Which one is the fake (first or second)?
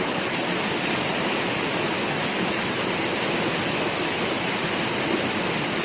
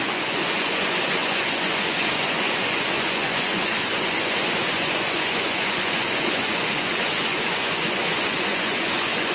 second